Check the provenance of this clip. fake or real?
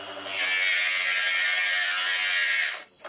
real